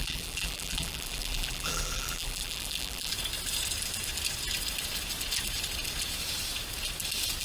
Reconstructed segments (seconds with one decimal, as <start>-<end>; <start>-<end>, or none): 0.0-3.1